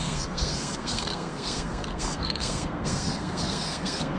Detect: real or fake fake